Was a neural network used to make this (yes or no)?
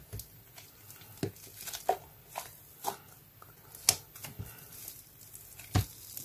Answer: no